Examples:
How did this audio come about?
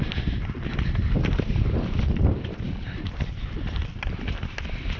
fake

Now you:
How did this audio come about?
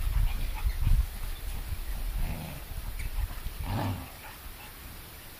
real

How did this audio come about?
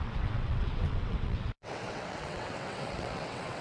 fake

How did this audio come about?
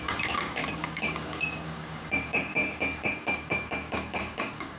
fake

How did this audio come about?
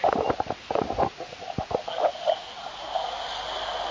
real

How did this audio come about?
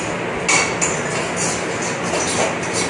real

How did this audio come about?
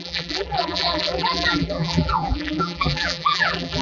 fake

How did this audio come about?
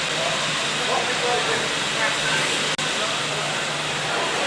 real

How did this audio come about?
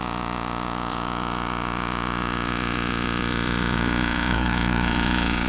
fake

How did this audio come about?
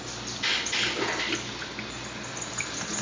real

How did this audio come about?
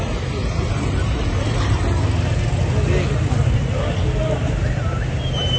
real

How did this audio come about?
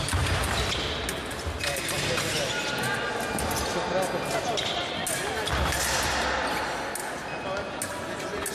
real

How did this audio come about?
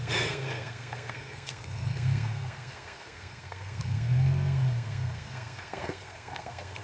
fake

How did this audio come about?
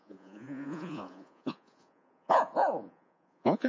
fake